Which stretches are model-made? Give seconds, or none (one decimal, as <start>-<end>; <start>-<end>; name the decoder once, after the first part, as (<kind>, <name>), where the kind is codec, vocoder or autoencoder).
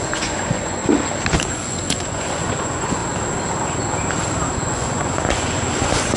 0.0-0.8 (vocoder, Vocos); 1.3-3.0; 4.5-6.2